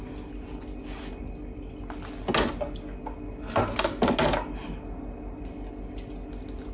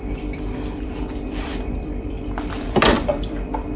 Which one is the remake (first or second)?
second